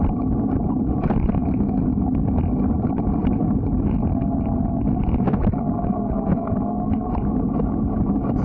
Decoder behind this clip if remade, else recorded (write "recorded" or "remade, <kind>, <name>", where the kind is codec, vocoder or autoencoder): recorded